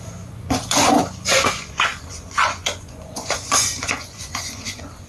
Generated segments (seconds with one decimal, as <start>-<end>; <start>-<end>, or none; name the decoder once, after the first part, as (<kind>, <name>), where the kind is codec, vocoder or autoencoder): 0.0-5.1 (vocoder, Vocos)